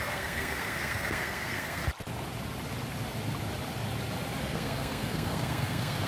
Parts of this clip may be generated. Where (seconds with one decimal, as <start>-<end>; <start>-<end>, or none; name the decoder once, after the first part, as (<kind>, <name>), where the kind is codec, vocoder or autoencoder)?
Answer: 0.0-1.8 (codec, SNAC); 4.4-6.1